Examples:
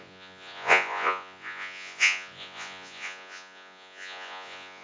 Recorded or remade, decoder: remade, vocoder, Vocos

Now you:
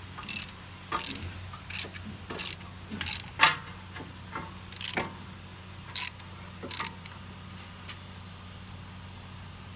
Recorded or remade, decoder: recorded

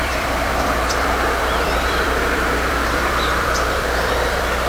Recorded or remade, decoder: remade, vocoder, BigVGAN v2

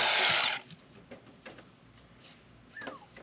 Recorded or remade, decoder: remade, vocoder, BigVGAN v2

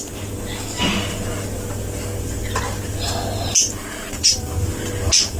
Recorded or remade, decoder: recorded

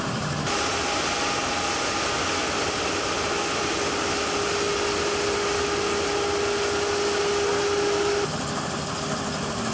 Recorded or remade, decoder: recorded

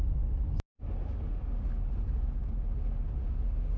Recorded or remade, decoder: recorded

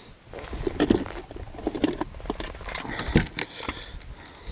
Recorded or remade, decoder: recorded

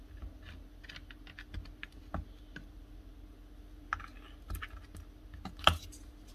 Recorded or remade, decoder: recorded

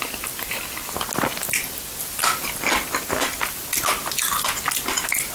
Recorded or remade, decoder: recorded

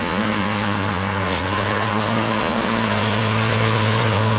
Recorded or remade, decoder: remade, vocoder, Vocos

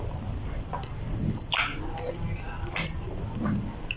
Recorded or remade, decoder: recorded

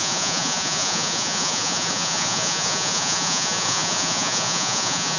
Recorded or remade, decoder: remade, vocoder, Vocos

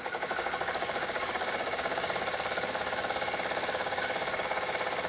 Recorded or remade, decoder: remade, codec, DAC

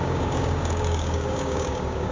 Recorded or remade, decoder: remade, codec, DAC